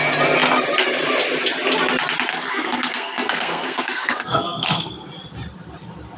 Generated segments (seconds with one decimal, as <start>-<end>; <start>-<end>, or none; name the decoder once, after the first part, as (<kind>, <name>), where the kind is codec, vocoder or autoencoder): 2.3-5.1 (codec, SNAC)